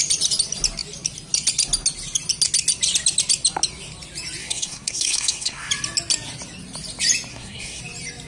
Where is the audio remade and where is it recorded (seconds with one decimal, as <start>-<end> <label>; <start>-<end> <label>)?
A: 0.0-4.4 recorded; 4.4-5.7 remade; 5.7-7.3 recorded; 7.3-7.8 remade; 7.8-8.3 recorded

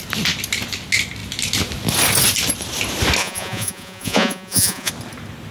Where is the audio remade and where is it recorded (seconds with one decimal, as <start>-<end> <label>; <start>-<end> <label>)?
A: 0.0-3.2 recorded; 3.2-4.9 remade; 4.9-5.5 recorded

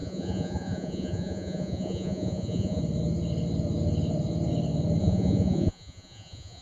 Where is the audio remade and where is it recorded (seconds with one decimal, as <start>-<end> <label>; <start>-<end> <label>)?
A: 0.0-2.8 remade; 2.8-5.0 recorded; 5.0-6.6 remade

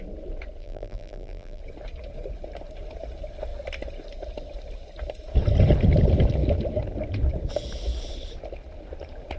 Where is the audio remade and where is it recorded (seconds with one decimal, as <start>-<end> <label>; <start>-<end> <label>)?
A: 0.0-0.6 recorded; 0.6-1.6 remade; 1.6-9.4 recorded

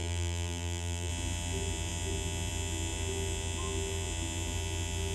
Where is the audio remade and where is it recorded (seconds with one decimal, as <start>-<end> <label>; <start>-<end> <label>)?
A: 0.0-1.1 remade; 1.1-5.1 recorded